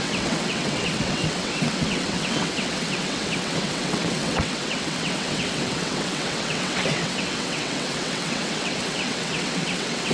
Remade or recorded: remade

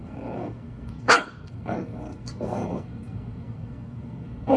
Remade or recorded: remade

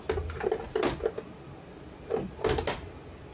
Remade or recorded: recorded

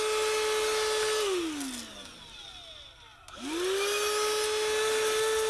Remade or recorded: recorded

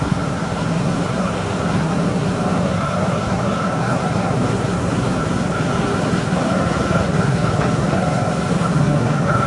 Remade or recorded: remade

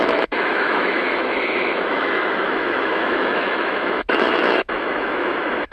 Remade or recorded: remade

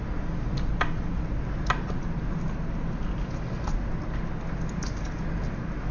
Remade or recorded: recorded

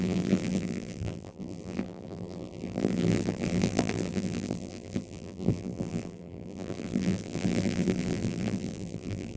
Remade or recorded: remade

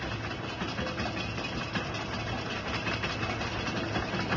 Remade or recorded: recorded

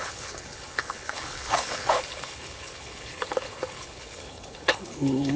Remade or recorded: remade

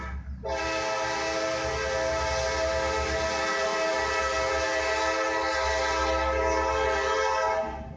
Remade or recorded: recorded